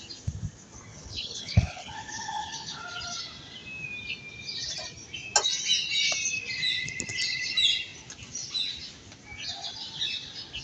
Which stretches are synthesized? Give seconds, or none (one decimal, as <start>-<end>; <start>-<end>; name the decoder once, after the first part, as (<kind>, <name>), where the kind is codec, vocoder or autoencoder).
0.9-2.8 (codec, HILCodec)

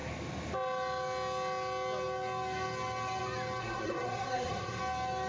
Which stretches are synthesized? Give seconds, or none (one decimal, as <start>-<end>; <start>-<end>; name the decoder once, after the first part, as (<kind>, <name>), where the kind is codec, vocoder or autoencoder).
3.6-4.8 (codec, SNAC)

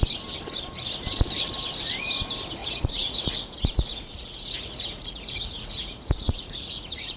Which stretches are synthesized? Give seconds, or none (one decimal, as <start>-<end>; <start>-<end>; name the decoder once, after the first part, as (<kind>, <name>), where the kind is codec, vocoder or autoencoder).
2.6-7.2 (vocoder, Vocos)

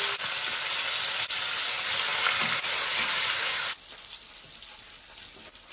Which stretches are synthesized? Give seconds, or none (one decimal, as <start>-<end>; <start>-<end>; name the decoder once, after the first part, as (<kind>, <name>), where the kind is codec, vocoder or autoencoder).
none

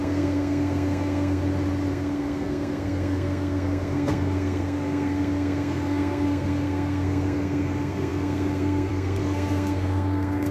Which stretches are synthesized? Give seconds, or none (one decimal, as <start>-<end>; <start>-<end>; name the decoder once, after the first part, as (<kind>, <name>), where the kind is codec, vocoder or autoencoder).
0.0-1.4 (codec, SNAC); 1.9-10.5

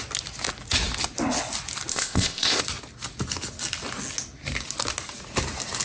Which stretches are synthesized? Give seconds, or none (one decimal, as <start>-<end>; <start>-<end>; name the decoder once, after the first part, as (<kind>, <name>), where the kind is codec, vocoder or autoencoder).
1.9-2.6 (codec, ZipCodec)

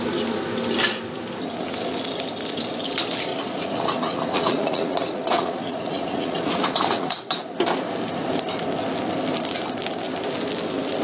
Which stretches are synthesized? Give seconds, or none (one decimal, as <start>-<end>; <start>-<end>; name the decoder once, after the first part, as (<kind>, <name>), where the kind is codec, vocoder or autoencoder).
3.3-7.3 (vocoder, Vocos)